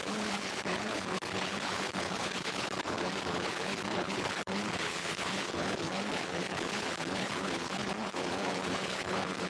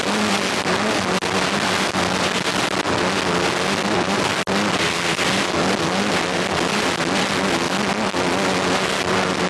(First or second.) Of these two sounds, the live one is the second